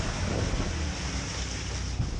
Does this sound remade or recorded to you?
recorded